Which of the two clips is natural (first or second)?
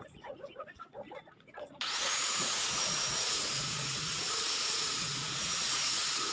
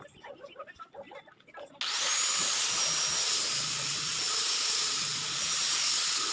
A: second